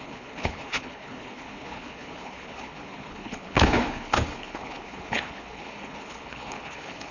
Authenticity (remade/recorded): remade